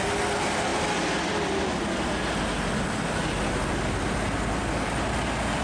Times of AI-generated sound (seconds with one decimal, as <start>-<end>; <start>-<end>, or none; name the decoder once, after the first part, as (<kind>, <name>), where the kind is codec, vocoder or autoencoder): 0.7-1.8 (vocoder, BigVGAN v2)